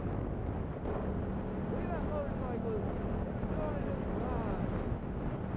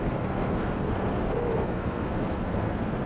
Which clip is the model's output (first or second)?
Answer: second